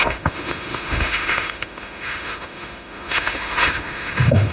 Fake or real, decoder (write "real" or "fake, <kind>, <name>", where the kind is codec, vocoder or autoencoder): fake, autoencoder, DAC-VAE